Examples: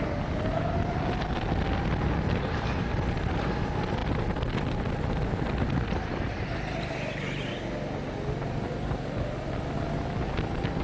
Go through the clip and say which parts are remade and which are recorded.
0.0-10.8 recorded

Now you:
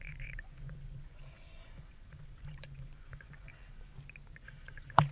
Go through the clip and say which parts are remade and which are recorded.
0.0-3.5 remade; 3.5-4.3 recorded; 4.3-5.1 remade

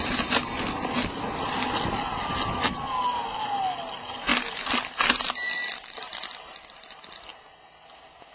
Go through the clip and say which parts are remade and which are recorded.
0.0-8.3 recorded

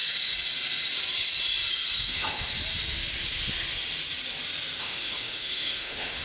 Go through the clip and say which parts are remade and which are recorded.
0.0-2.0 recorded; 2.0-2.5 remade; 2.5-4.8 recorded; 4.8-6.2 remade